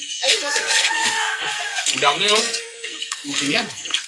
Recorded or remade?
remade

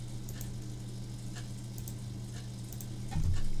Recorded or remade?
recorded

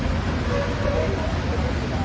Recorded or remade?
recorded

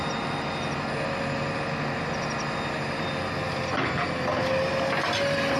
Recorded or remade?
recorded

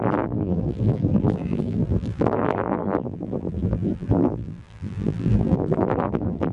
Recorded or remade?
remade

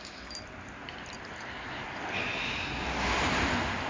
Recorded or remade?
recorded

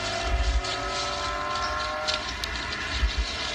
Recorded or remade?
recorded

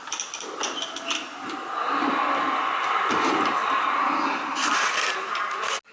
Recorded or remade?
recorded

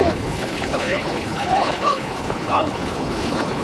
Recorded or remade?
remade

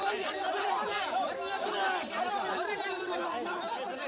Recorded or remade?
recorded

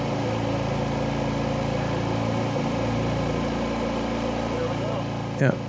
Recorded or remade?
recorded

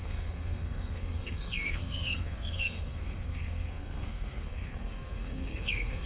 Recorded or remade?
remade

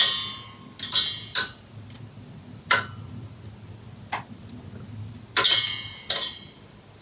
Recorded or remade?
recorded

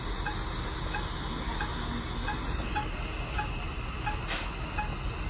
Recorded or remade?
recorded